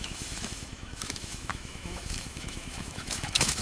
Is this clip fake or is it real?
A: fake